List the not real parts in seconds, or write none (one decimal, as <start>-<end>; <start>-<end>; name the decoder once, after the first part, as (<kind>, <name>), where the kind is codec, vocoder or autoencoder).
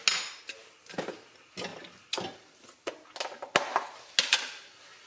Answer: none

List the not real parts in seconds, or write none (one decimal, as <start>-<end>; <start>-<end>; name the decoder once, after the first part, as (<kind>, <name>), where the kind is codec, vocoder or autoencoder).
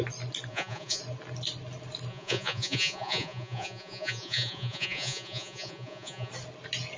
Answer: 0.5-1.0 (vocoder, Vocos); 2.1-6.3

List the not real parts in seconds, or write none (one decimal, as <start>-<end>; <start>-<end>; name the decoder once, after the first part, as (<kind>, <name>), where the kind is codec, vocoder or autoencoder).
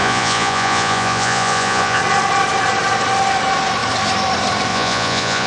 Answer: 0.0-2.0 (vocoder, Vocos); 4.7-5.5